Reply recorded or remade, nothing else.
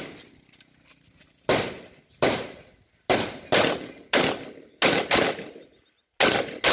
recorded